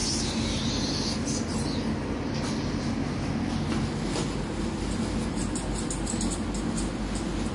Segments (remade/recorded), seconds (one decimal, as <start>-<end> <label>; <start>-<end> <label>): 0.0-7.5 recorded